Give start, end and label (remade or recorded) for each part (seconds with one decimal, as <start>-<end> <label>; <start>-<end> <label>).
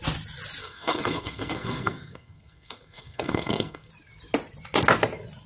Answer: 0.0-0.6 recorded; 0.6-3.9 remade; 3.9-5.5 recorded